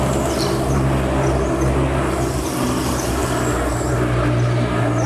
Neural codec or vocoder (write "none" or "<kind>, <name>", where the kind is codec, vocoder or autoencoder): none